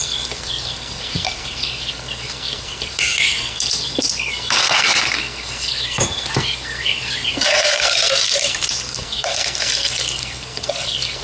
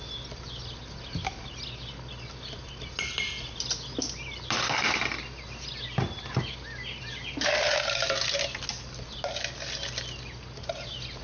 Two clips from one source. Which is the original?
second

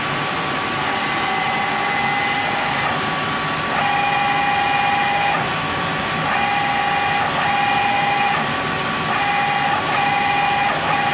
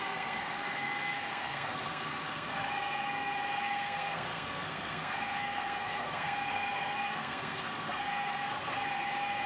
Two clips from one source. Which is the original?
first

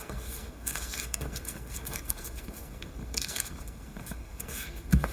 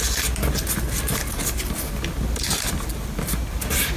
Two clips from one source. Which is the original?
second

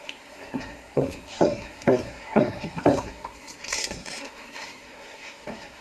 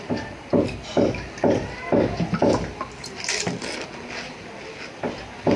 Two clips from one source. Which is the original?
second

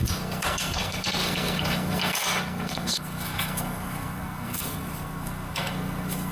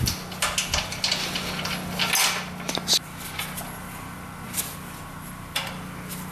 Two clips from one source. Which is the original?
second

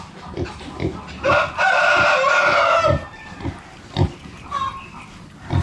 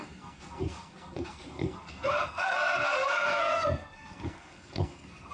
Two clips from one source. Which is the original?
first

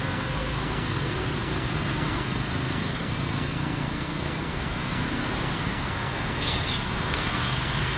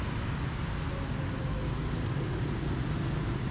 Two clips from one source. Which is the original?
second